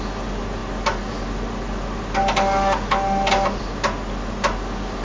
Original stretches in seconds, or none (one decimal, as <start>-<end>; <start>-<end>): 0.0-5.0